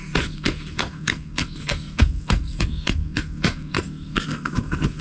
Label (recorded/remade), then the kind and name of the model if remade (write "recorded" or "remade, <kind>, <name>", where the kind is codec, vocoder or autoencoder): remade, codec, SNAC